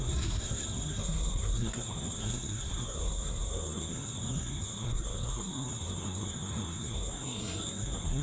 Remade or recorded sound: remade